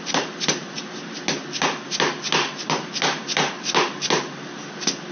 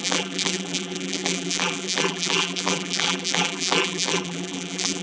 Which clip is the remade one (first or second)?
second